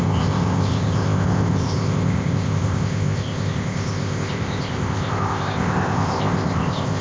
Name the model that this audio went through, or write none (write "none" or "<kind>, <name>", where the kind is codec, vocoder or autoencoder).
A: codec, ZipCodec